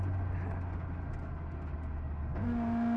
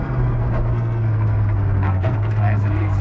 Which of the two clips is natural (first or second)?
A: first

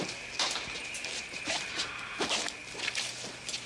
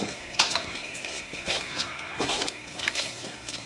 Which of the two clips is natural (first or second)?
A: first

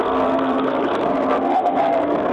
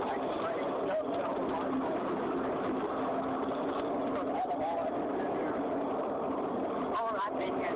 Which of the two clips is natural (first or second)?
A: second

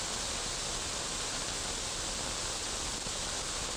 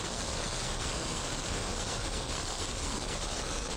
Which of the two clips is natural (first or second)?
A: first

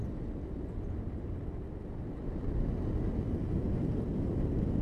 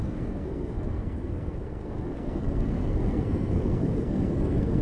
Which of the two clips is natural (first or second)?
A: first